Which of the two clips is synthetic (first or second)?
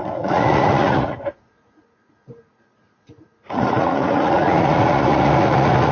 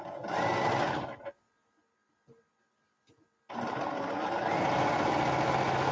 first